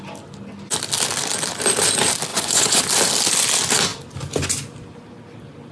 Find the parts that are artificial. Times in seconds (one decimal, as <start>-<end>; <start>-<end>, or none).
2.3-2.8

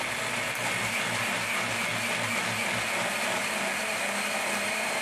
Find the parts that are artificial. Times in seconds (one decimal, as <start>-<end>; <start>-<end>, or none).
none